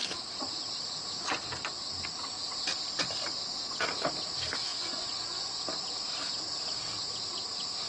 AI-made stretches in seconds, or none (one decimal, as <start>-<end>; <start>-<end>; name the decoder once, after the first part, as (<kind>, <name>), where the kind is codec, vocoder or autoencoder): 4.7-5.6 (vocoder, Vocos)